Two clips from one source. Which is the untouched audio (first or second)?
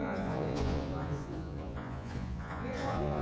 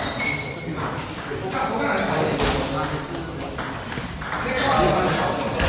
second